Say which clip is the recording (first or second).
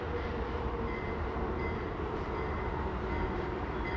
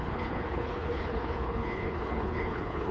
first